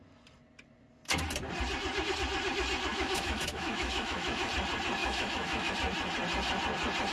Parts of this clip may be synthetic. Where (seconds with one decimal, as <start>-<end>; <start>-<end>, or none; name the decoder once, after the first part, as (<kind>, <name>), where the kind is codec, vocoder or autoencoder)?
2.9-4.5 (autoencoder, DAC-VAE); 5.0-5.7